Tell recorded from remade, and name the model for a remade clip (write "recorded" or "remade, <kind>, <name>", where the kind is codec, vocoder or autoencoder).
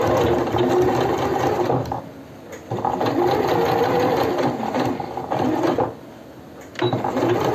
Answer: recorded